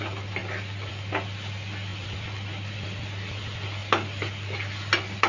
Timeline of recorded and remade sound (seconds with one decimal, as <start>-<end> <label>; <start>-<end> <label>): 0.0-5.3 recorded